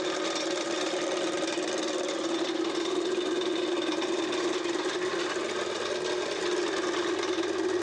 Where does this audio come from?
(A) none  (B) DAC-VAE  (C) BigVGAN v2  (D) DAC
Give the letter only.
A